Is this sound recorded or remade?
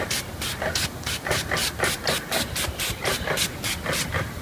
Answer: recorded